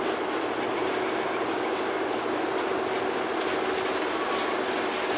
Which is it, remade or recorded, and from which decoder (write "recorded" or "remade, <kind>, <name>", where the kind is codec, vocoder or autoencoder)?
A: recorded